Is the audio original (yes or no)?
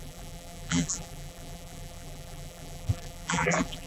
no